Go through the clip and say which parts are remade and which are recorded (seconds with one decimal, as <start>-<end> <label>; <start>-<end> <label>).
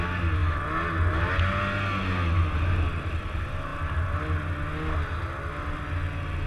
0.0-6.5 recorded